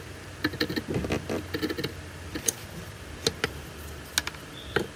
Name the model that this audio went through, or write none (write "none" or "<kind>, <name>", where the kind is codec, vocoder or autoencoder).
none